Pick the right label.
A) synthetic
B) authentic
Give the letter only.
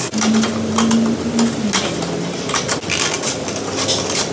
B